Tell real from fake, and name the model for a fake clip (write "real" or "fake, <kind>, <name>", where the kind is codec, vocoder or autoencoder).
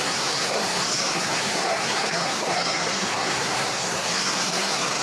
fake, codec, SNAC